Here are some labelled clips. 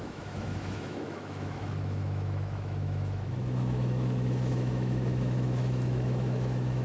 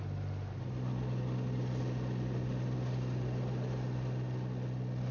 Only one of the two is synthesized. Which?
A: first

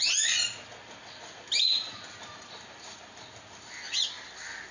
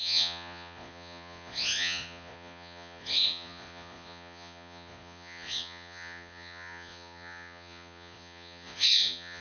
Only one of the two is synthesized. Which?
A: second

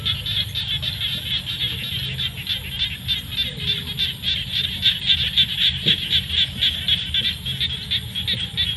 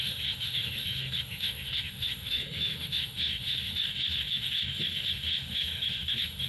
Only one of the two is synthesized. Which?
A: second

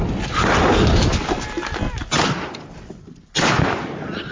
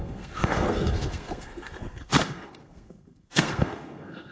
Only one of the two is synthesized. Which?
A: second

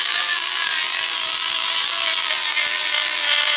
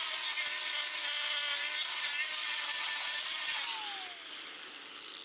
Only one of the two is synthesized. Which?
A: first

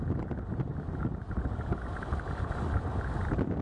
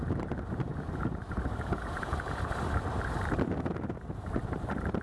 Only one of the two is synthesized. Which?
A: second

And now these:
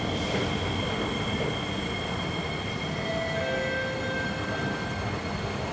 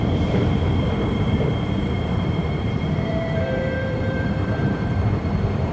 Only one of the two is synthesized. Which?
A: second